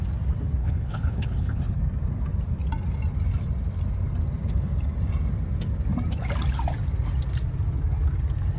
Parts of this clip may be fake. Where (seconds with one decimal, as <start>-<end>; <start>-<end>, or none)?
0.6-1.8